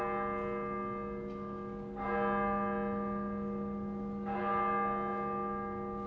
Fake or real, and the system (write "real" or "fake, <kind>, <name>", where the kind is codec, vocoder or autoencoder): real